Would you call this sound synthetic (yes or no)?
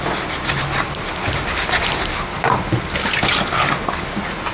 no